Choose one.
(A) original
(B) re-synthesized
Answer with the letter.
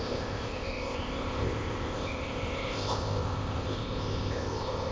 B